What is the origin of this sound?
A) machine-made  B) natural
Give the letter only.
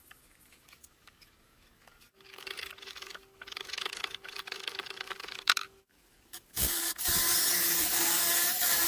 A